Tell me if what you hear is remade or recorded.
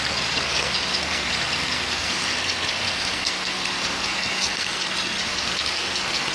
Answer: remade